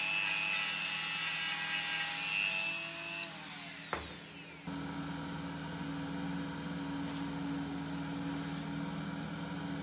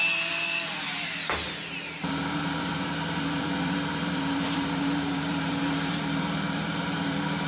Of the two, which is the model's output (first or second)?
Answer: second